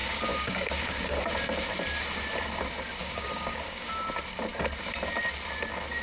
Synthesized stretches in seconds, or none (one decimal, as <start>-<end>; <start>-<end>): 0.0-1.2; 3.0-3.9